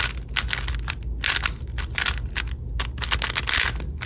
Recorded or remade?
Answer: recorded